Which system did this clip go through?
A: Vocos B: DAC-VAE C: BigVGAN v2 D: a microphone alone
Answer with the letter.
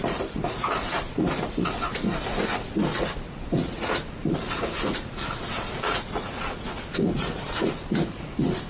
A